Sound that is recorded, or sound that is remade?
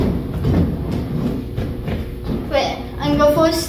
recorded